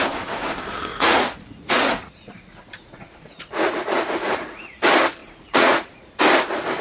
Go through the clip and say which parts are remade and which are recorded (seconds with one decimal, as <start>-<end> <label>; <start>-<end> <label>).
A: 0.0-0.9 recorded; 0.9-4.8 remade; 4.8-5.2 recorded; 5.2-6.1 remade; 6.1-6.8 recorded